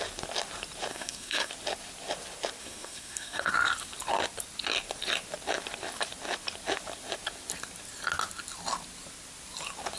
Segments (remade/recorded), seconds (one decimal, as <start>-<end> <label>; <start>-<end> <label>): 0.0-0.9 recorded; 0.9-1.5 remade; 1.5-2.6 recorded; 2.6-3.5 remade; 3.5-10.0 recorded